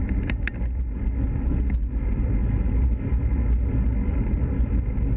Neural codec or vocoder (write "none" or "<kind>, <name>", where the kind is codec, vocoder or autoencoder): none